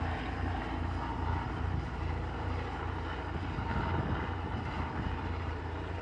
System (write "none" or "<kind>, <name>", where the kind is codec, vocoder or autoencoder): vocoder, BigVGAN v2